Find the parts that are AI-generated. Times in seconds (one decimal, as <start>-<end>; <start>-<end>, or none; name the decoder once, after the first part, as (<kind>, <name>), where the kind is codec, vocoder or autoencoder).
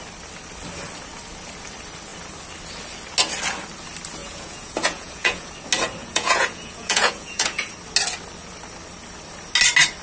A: 4.2-5.5 (vocoder, Vocos); 6.0-7.7